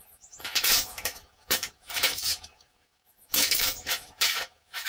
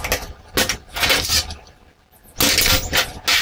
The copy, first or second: first